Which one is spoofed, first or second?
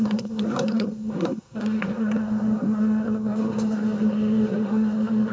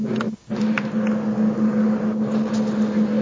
first